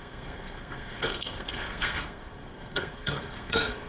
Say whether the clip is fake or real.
fake